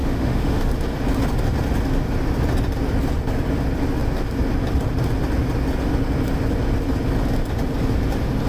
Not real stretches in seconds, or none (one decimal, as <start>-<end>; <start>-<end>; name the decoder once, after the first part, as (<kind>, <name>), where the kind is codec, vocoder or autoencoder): 0.0-0.7 (autoencoder, DAC-VAE)